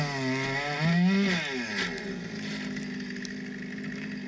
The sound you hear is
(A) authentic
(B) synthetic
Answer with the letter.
A